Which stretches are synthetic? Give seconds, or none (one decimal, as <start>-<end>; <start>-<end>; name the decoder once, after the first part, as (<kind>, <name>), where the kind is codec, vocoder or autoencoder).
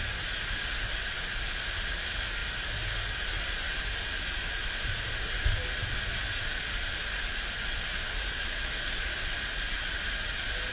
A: none